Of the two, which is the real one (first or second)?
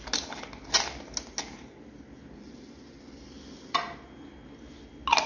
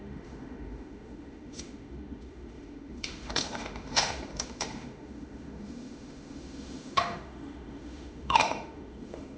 first